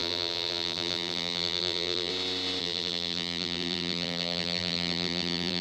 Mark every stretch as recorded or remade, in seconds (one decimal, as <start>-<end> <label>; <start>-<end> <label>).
0.0-2.1 remade; 2.1-2.6 recorded; 2.6-5.6 remade